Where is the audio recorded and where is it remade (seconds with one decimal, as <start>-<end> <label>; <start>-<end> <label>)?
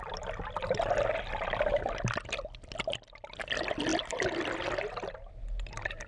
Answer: 0.0-6.1 recorded